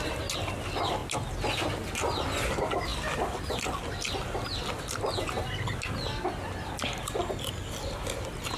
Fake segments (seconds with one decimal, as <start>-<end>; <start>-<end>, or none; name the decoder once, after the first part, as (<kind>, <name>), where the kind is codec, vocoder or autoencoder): none